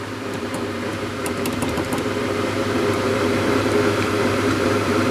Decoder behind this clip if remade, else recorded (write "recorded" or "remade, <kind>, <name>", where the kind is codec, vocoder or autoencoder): remade, vocoder, BigVGAN v2